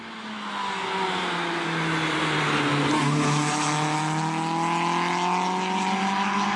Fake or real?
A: real